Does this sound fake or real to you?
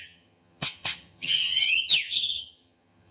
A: fake